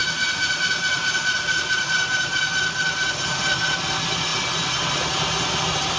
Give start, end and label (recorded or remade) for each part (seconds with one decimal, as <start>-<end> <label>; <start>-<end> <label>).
0.0-6.0 recorded